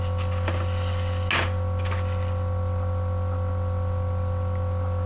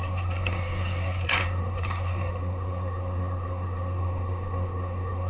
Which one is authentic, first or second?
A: first